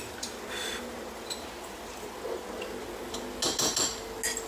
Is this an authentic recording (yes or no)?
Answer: yes